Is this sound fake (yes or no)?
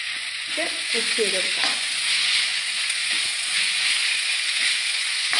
yes